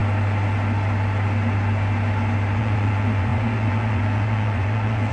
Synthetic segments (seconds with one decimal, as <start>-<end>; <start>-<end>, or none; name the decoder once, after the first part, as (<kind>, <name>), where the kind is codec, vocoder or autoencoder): 2.6-5.1 (vocoder, Vocos)